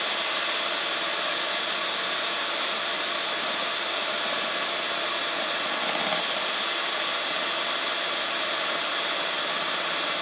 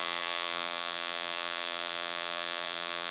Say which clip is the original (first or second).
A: first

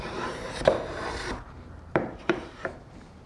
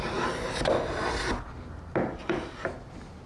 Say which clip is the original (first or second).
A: second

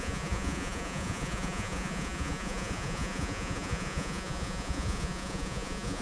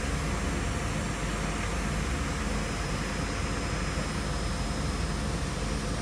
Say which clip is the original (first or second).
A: second